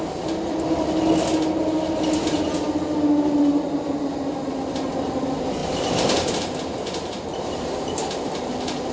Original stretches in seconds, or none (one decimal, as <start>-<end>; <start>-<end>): 0.0-5.6; 7.8-8.9